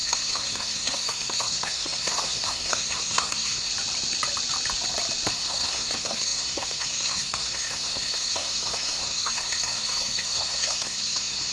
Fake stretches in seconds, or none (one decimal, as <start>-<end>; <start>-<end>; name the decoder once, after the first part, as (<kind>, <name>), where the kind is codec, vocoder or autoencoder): 0.0-3.7 (codec, SNAC); 5.3-11.5